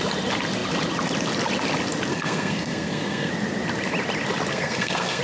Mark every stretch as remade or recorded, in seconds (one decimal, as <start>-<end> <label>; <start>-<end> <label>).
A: 0.0-2.1 recorded; 2.1-3.3 remade; 3.3-4.5 recorded; 4.5-5.2 remade